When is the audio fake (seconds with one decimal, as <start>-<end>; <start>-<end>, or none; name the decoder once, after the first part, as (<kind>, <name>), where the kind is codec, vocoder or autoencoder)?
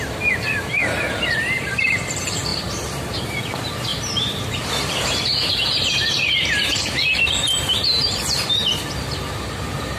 0.8-2.0 (vocoder, BigVGAN v2); 2.5-3.4; 3.9-8.8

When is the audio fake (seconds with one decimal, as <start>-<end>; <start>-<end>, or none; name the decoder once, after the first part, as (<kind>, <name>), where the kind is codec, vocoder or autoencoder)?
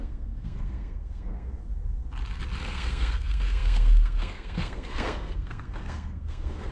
0.0-1.7 (codec, SNAC); 2.7-6.7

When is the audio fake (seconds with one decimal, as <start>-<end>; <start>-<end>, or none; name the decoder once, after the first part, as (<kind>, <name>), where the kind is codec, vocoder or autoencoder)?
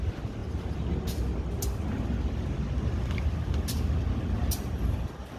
none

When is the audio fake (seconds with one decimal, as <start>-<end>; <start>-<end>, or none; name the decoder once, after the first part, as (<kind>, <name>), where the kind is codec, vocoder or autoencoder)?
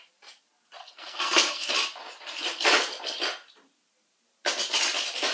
0.8-1.7 (codec, SNAC)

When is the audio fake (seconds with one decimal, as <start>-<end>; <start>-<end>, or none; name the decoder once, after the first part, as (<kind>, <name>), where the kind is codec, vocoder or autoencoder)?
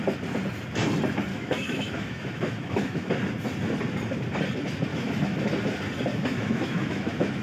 1.3-3.1 (autoencoder, DAC-VAE); 4.9-5.4; 6.1-7.4